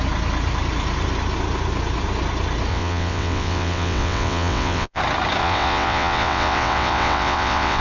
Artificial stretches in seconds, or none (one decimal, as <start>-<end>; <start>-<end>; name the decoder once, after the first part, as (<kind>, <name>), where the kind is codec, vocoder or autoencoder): 2.7-5.0 (vocoder, WaveNeXt); 5.4-7.8

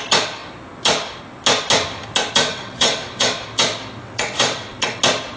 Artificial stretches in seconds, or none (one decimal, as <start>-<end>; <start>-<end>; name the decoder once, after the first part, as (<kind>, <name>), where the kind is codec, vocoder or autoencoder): 2.5-3.3 (vocoder, WaveNeXt); 4.0-5.0

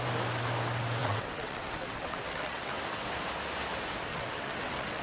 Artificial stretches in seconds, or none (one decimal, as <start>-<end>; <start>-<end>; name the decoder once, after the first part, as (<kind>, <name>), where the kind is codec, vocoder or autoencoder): 1.0-2.8 (vocoder, WaveNeXt); 4.1-5.0

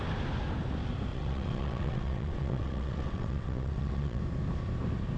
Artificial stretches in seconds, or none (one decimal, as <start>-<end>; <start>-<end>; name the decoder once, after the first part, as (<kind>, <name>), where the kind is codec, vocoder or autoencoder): 1.1-4.2 (vocoder, WaveNeXt)